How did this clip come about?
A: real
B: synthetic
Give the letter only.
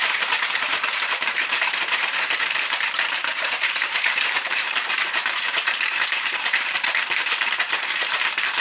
B